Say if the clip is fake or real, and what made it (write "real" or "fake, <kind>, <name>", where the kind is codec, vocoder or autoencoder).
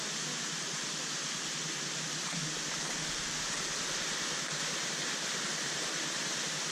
real